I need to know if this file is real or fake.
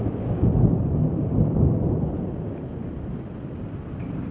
real